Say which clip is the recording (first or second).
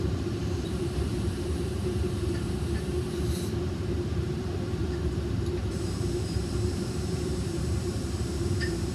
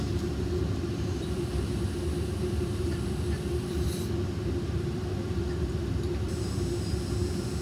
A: second